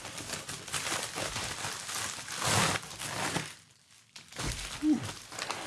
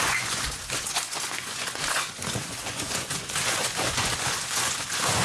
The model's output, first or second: second